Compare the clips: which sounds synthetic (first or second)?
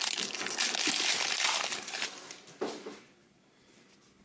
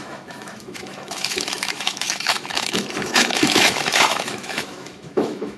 second